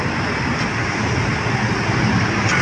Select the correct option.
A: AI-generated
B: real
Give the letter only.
B